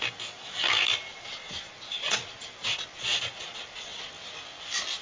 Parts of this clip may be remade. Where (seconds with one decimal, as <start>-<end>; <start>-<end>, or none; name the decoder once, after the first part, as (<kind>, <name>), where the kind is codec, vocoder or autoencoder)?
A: 1.1-4.1 (vocoder, Vocos)